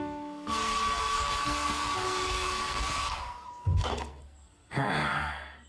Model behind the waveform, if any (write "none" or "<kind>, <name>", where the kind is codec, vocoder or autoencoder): codec, SNAC